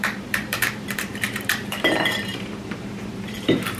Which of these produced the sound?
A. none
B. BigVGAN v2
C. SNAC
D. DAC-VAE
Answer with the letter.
B